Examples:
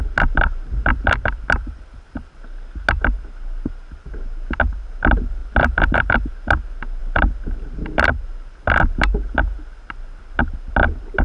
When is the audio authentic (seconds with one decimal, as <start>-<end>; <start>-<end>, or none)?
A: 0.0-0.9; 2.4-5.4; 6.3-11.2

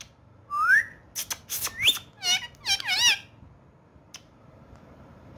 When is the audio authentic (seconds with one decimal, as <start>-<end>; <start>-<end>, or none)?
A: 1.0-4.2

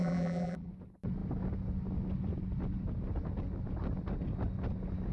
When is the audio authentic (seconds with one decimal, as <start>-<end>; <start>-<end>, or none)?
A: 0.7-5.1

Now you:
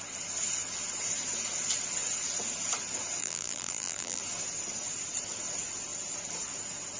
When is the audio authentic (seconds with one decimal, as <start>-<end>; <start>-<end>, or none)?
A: 0.0-3.2; 4.2-7.0